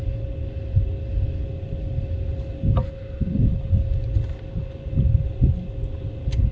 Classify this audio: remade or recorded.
recorded